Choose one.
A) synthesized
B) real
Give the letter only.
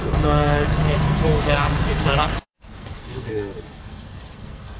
A